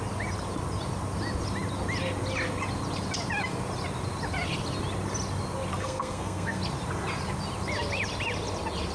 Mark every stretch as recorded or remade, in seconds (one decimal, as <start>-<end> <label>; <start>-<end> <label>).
0.0-5.8 recorded; 5.8-6.6 remade; 6.6-8.9 recorded